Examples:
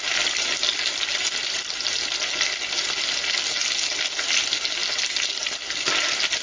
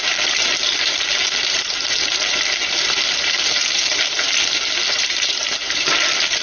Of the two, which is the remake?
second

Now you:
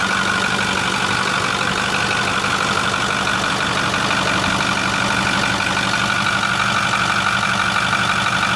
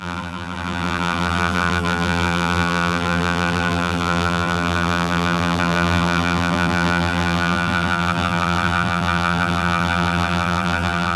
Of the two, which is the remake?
second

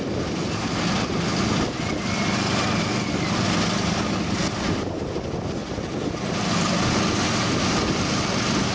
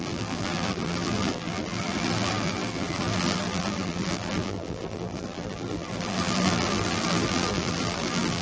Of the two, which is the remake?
second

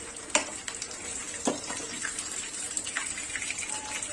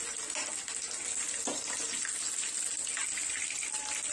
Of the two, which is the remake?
first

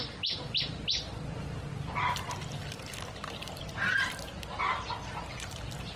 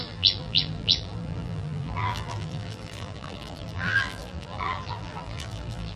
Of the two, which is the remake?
second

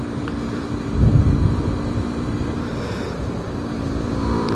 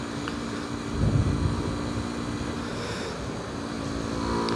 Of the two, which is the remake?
first